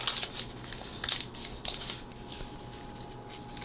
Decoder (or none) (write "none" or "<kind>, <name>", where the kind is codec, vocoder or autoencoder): none